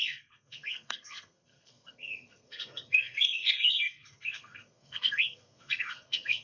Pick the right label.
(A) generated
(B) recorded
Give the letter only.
A